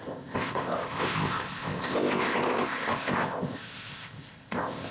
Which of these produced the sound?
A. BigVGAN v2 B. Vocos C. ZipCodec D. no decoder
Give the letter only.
C